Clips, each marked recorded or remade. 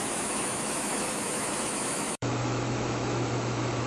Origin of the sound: remade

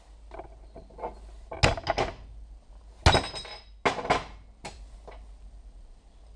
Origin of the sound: recorded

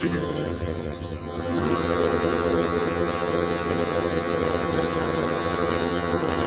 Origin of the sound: remade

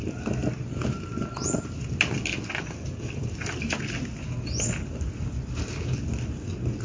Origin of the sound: recorded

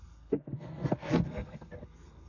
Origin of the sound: remade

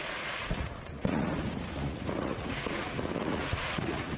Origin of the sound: remade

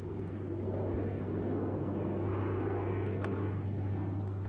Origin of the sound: remade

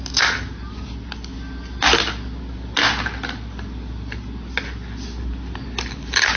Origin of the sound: recorded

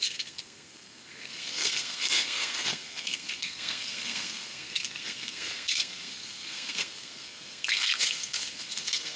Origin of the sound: remade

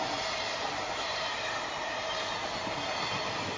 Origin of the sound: recorded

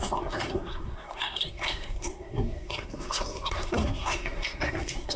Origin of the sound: remade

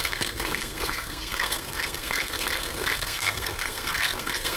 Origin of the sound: remade